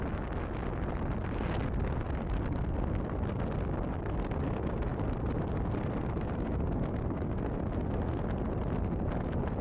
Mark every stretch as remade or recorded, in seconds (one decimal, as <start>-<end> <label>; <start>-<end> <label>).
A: 0.0-9.6 recorded